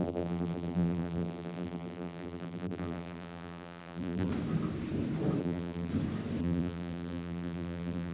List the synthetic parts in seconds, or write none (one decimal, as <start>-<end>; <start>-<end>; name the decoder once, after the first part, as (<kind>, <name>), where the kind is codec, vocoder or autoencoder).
0.0-4.3 (vocoder, BigVGAN v2); 5.4-5.9; 6.4-8.1